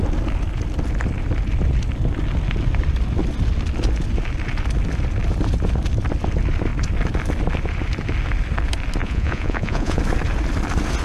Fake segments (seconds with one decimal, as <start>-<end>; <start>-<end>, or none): 9.0-10.0